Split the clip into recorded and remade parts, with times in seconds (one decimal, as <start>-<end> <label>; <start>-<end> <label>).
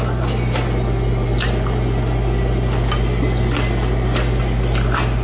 0.0-5.2 recorded